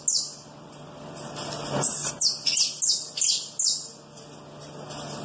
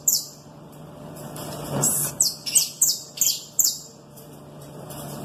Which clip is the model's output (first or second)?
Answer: second